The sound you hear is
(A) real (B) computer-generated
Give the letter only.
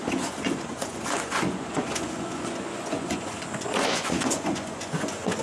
B